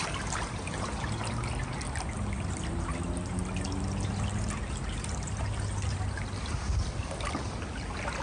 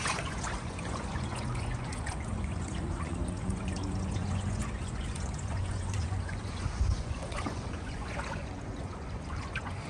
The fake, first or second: second